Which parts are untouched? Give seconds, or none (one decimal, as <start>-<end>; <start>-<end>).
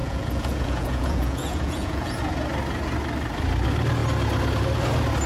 2.2-5.3